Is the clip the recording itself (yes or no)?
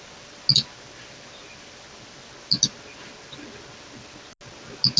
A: yes